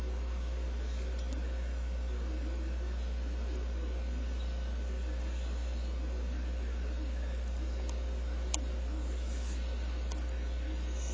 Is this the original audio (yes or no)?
yes